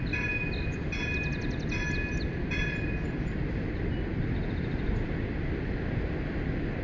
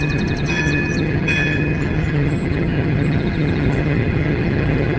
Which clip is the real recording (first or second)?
first